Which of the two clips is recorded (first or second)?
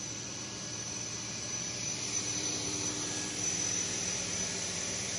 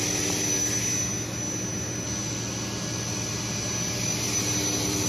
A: second